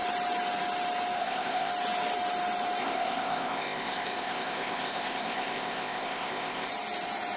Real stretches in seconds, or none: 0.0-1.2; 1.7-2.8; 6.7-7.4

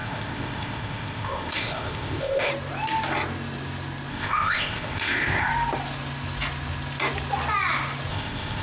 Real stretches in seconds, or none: 2.5-4.1; 5.5-8.1

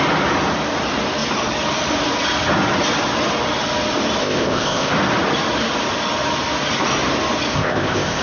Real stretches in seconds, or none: 0.0-4.2; 4.9-7.5

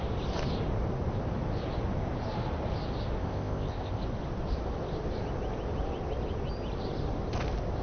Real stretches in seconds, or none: 0.0-3.2; 4.0-7.8

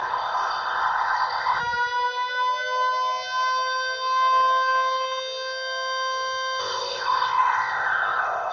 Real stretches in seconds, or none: 1.6-6.6